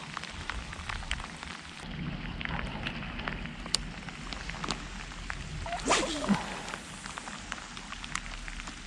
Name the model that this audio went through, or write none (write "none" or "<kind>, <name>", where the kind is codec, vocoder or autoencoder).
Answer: none